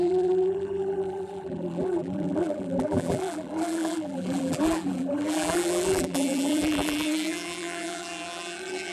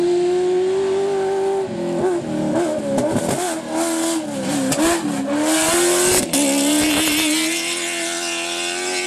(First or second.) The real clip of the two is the second